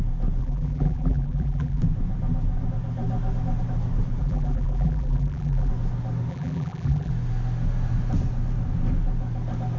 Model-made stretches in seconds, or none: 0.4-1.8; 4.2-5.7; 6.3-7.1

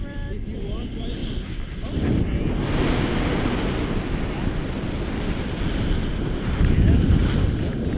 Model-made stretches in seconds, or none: 0.0-1.2; 5.3-7.2